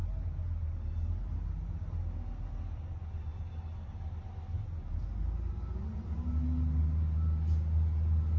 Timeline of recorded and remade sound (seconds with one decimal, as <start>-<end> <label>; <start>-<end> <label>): 0.0-8.4 recorded